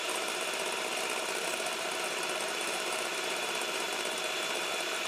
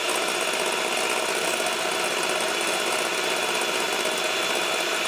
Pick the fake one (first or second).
first